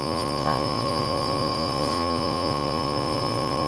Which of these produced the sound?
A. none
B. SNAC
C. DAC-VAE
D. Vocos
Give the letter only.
D